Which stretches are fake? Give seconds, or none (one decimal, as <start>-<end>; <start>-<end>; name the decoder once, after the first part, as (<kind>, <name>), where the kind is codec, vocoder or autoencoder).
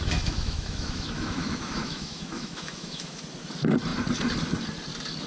0.0-3.2 (autoencoder, DAC-VAE)